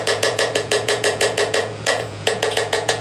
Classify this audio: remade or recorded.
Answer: remade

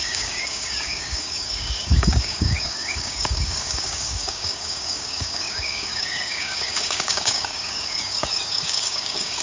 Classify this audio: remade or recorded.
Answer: remade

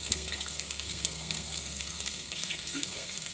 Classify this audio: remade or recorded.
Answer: remade